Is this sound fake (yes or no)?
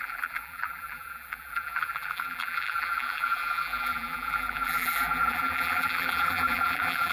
yes